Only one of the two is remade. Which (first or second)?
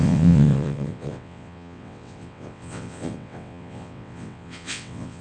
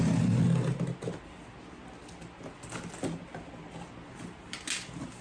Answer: first